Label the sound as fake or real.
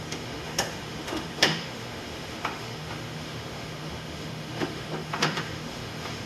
fake